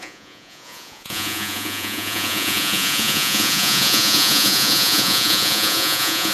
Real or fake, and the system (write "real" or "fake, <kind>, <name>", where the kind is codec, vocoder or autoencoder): fake, vocoder, Vocos